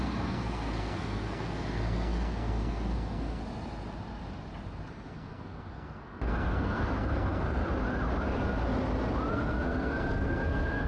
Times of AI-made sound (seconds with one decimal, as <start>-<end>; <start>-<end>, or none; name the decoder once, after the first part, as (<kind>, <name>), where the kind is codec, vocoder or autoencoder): 0.0-3.4 (codec, SNAC); 4.9-7.6; 9.3-10.9